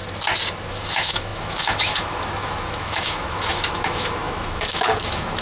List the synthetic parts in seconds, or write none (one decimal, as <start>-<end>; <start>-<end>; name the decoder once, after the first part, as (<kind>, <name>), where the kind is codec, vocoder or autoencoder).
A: 0.7-5.4 (autoencoder, DAC-VAE)